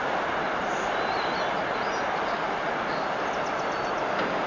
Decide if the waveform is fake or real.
real